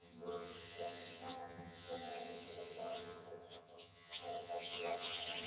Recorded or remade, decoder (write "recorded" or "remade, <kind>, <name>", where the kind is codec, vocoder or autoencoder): remade, vocoder, HiFi-GAN